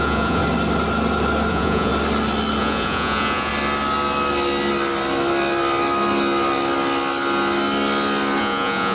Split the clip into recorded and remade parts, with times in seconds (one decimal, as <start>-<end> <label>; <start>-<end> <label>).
0.0-0.4 remade; 0.4-1.5 recorded; 1.5-1.9 remade; 1.9-2.6 recorded; 2.6-3.5 remade; 3.5-8.4 recorded; 8.4-8.9 remade